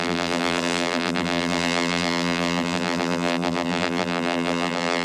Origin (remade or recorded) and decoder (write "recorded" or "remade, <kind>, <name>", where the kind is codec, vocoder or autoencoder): remade, vocoder, BigVGAN v2